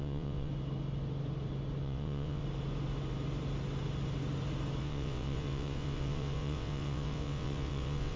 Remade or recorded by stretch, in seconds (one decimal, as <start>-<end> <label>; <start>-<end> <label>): 0.0-0.5 remade; 0.5-1.8 recorded; 1.8-2.4 remade; 2.4-4.8 recorded; 4.8-8.2 remade